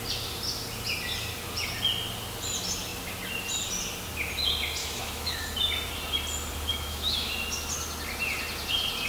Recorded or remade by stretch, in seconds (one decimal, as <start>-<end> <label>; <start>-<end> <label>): 0.0-4.8 recorded; 4.8-5.4 remade; 5.4-6.7 recorded; 6.7-7.3 remade; 7.3-9.1 recorded